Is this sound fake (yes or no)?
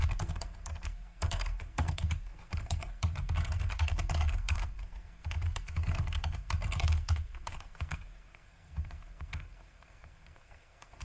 yes